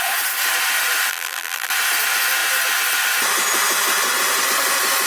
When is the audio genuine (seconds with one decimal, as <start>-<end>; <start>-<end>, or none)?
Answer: 0.0-1.1; 1.7-5.1